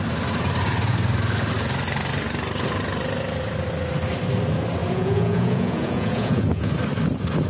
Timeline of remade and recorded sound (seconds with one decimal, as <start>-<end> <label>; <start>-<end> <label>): 0.0-4.8 recorded; 4.8-6.7 remade; 6.7-7.5 recorded